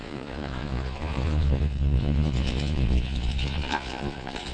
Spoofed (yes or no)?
yes